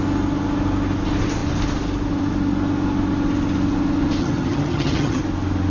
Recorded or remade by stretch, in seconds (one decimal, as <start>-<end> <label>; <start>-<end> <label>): 0.0-4.2 recorded; 4.2-5.2 remade; 5.2-5.7 recorded